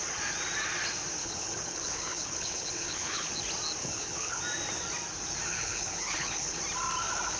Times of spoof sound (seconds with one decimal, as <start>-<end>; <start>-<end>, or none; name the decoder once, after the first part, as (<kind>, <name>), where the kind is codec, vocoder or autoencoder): 1.2-3.3 (codec, HILCodec); 3.8-4.4; 5.5-6.6